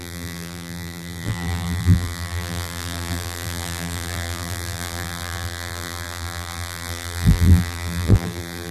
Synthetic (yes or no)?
yes